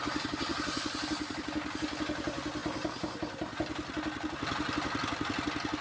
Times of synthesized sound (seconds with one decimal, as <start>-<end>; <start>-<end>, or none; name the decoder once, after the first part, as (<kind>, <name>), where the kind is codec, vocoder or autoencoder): none